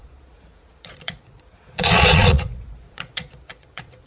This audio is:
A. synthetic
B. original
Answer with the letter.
A